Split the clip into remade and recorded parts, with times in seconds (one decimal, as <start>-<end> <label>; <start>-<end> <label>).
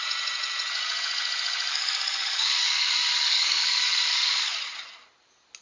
0.0-1.7 recorded; 1.7-4.4 remade; 4.4-5.6 recorded